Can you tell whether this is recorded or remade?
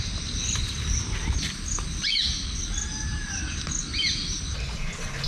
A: recorded